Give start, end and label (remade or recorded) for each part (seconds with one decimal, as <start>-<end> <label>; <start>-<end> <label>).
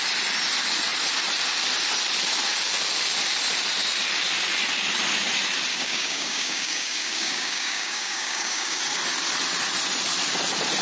0.0-5.7 recorded; 5.7-8.8 remade; 8.8-10.8 recorded